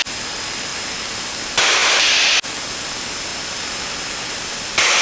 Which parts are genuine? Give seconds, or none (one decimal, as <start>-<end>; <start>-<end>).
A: 0.0-5.0